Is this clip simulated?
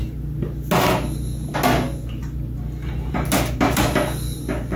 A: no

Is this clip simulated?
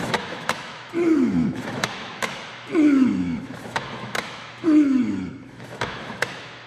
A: yes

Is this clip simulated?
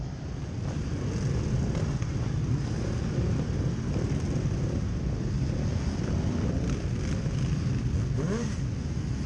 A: no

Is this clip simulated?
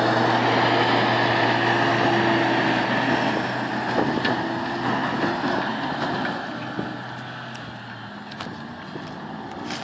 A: no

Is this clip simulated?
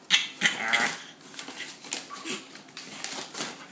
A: no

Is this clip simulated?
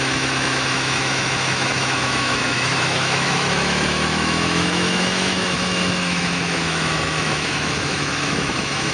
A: yes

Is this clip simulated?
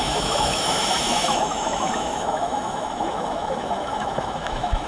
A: yes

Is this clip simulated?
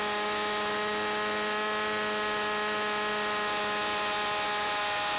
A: no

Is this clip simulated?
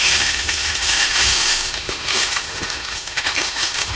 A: yes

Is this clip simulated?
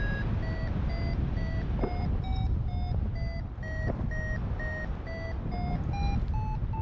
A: no